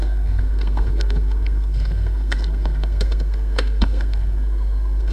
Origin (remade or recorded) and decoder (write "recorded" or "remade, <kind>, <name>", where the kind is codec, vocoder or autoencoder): remade, codec, SNAC